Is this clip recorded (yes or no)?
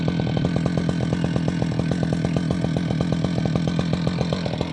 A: yes